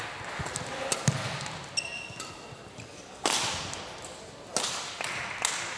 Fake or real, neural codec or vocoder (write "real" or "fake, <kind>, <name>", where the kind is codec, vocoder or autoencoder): real